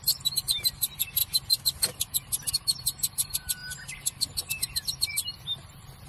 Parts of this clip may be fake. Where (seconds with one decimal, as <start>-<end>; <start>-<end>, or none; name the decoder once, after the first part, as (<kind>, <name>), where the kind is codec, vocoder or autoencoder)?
0.0-1.2 (vocoder, BigVGAN v2); 2.5-3.6; 4.5-6.1